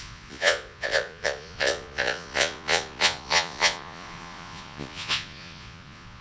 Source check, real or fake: fake